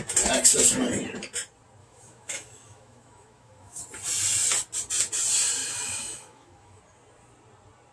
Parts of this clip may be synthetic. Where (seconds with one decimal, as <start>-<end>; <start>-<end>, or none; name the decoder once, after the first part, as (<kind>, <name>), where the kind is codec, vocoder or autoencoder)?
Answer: 1.8-3.8 (autoencoder, DAC-VAE); 5.6-6.8